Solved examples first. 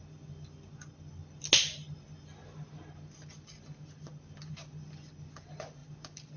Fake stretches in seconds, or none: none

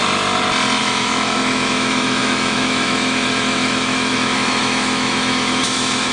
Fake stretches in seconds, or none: 0.8-6.1 (autoencoder, DAC-VAE)

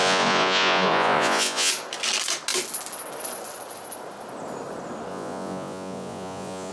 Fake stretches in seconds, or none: 0.0-1.7 (vocoder, Vocos); 5.1-6.7

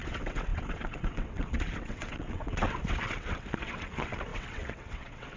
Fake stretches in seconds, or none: 0.0-5.4 (vocoder, WaveNeXt)

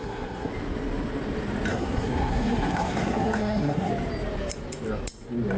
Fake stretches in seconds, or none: 0.0-0.5 (codec, SNAC); 1.7-3.9

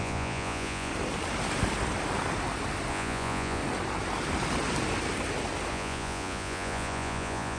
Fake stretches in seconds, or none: 0.0-0.9 (vocoder, Vocos); 2.9-3.6; 5.7-7.6

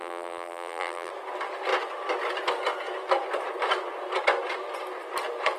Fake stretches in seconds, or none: 0.0-1.1 (vocoder, BigVGAN v2)

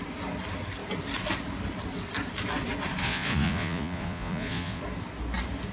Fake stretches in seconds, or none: 3.0-4.8 (vocoder, Vocos)